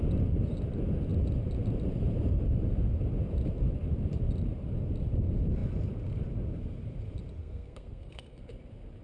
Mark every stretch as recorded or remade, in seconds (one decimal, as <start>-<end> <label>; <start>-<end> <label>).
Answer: 0.0-7.4 recorded; 7.4-8.5 remade; 8.5-9.0 recorded